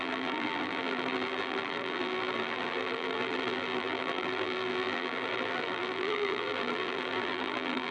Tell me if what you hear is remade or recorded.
remade